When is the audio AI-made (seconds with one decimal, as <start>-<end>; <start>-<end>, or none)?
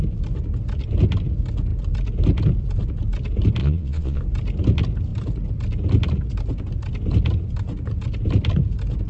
3.6-4.2